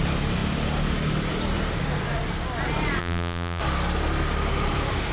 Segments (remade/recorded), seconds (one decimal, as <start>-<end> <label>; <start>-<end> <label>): 0.0-3.0 recorded; 3.0-3.6 remade; 3.6-5.1 recorded